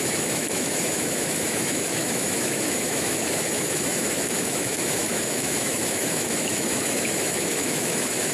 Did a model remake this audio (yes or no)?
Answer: yes